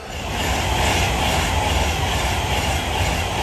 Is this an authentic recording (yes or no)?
yes